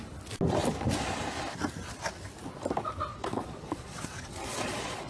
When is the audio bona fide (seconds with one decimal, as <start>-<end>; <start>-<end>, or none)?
0.0-3.1